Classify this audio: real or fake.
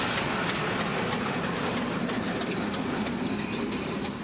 real